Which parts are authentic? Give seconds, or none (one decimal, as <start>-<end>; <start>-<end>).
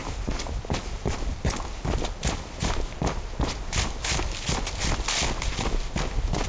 0.0-6.5